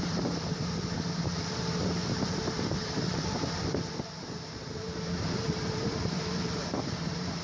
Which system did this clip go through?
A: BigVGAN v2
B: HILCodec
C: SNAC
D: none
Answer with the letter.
A